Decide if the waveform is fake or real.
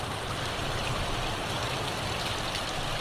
real